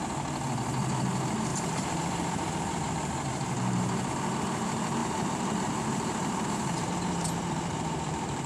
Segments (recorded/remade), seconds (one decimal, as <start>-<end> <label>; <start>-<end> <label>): 0.0-1.5 recorded; 1.5-4.1 remade; 4.1-5.0 recorded; 5.0-8.5 remade

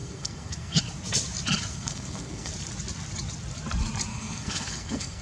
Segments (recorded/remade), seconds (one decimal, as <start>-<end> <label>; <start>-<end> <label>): 0.0-0.8 remade; 0.8-1.7 recorded; 1.7-2.5 remade; 2.5-4.1 recorded; 4.1-5.2 remade

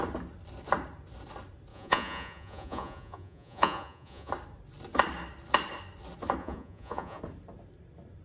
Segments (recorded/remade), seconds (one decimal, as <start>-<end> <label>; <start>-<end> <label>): 0.0-1.7 recorded; 1.7-4.3 remade; 4.3-6.4 recorded; 6.4-7.2 remade; 7.2-8.2 recorded

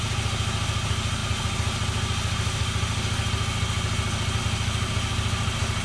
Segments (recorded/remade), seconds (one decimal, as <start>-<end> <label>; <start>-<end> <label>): 0.0-5.8 recorded

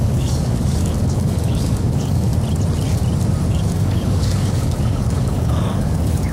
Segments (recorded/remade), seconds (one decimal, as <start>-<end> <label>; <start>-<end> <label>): 0.0-2.3 remade; 2.3-3.5 recorded; 3.5-6.3 remade

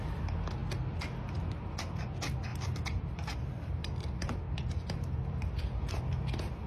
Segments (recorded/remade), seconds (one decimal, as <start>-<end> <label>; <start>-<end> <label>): 0.0-2.5 recorded; 2.5-6.1 remade; 6.1-6.7 recorded

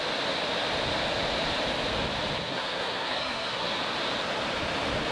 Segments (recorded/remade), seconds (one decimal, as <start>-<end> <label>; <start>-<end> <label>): 0.0-2.4 recorded; 2.4-3.8 remade; 3.8-5.1 recorded